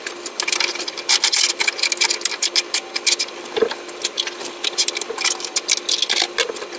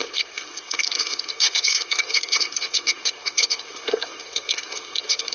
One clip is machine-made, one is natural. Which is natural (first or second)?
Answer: first